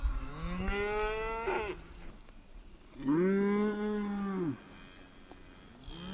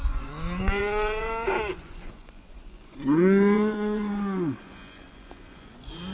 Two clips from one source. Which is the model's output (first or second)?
second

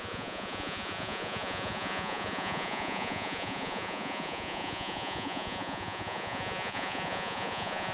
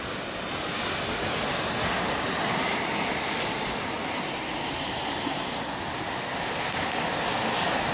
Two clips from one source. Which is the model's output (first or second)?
first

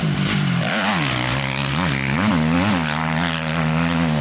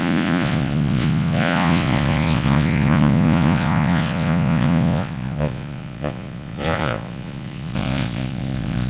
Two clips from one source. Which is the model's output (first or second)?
second